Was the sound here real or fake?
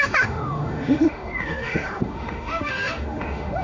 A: fake